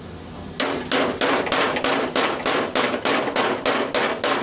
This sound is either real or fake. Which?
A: real